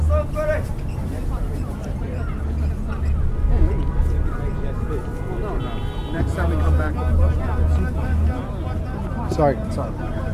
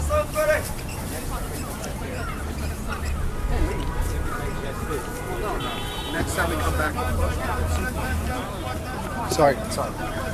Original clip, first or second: first